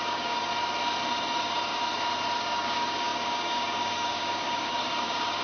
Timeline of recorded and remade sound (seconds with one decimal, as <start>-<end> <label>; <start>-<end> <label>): 0.0-0.5 remade; 0.5-1.4 recorded; 1.4-1.8 remade; 1.8-2.4 recorded; 2.4-5.4 remade